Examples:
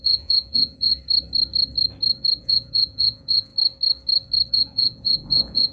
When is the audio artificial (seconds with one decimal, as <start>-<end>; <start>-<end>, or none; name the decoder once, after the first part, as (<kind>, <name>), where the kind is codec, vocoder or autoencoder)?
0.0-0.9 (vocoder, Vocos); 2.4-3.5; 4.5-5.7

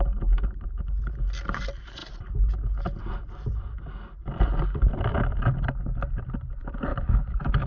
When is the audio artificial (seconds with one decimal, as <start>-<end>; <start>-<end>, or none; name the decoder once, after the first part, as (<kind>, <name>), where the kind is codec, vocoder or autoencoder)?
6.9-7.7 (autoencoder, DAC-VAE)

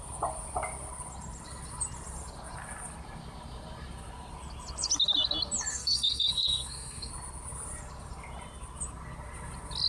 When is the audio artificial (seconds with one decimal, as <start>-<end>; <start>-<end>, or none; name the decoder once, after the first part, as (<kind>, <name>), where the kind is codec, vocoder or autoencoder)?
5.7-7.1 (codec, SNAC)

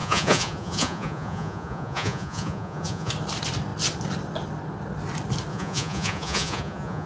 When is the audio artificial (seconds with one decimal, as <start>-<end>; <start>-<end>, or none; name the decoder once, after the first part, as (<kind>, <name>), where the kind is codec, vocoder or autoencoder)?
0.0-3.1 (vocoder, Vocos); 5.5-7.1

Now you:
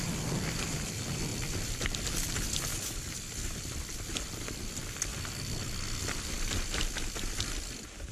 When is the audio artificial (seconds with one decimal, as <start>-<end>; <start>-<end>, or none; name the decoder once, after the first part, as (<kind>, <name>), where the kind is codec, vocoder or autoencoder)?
0.0-1.3 (vocoder, BigVGAN v2); 2.1-5.1; 6.0-8.1

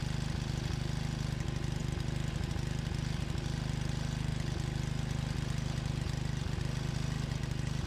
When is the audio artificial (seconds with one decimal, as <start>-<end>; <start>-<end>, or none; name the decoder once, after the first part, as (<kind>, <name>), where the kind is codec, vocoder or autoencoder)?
6.4-6.9 (vocoder, BigVGAN v2)

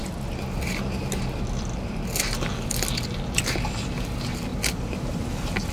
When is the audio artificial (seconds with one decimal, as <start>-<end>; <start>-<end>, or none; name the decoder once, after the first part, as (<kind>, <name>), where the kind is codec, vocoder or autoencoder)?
none

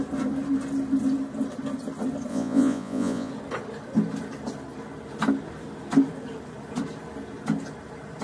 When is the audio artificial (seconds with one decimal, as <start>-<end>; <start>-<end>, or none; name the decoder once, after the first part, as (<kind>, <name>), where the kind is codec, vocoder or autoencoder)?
2.3-3.3 (vocoder, Vocos)